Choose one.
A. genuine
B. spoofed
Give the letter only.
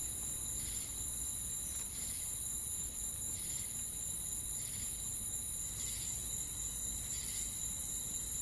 A